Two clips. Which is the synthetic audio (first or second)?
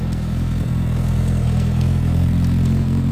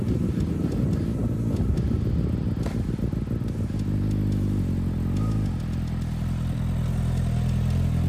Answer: first